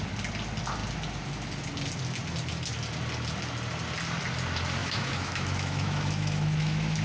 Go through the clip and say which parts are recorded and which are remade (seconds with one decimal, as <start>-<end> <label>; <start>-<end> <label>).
0.0-4.8 recorded; 4.8-7.0 remade